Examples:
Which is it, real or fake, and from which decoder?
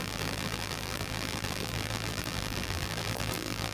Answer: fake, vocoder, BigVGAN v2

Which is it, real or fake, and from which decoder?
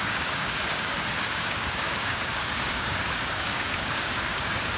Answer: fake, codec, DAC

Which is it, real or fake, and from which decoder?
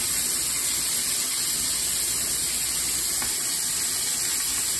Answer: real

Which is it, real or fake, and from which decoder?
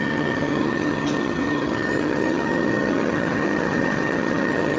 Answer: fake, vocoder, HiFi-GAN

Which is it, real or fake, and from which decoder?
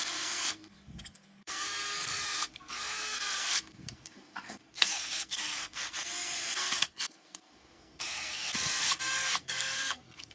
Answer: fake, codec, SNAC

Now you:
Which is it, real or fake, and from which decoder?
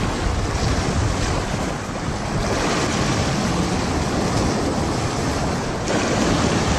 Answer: real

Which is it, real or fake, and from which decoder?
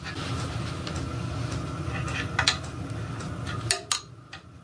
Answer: real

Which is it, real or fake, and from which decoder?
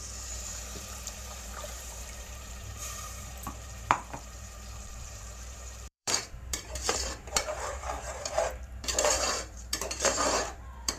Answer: fake, vocoder, BigVGAN v2